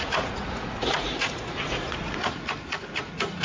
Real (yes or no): no